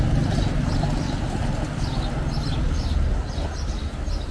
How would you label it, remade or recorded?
recorded